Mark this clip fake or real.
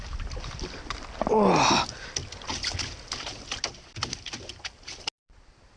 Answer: real